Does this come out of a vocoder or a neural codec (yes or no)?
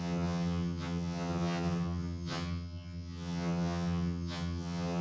yes